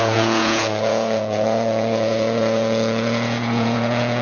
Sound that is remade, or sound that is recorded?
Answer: remade